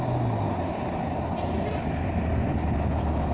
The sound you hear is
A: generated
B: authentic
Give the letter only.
B